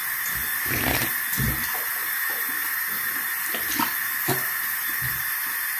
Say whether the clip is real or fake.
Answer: real